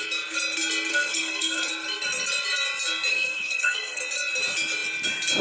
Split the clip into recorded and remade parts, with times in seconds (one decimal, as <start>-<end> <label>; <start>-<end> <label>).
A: 0.0-0.9 recorded; 0.9-1.7 remade; 1.7-3.1 recorded; 3.1-4.0 remade; 4.0-5.4 recorded